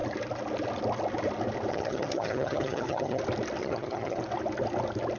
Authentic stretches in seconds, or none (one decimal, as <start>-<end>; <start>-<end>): 0.0-1.7; 3.2-3.6; 4.2-5.2